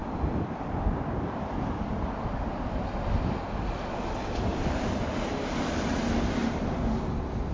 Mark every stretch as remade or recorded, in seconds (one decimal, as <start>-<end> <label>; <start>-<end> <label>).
0.0-4.5 recorded; 4.5-5.1 remade; 5.1-7.5 recorded